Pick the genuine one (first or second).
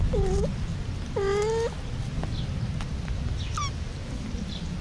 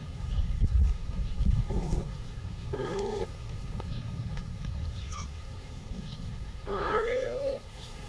first